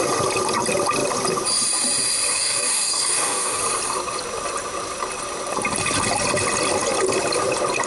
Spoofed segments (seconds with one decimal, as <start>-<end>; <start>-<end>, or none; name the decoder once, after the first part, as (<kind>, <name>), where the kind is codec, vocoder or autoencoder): 2.3-3.6 (codec, DAC)